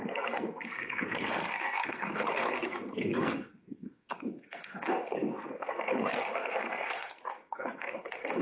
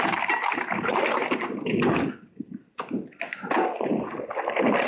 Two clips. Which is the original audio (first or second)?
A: second